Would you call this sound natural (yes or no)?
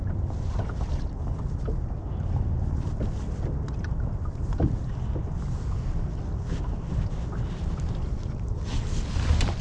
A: yes